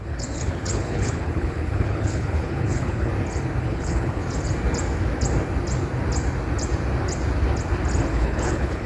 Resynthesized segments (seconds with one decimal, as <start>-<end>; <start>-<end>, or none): 0.0-3.1; 3.6-4.2; 8.1-8.9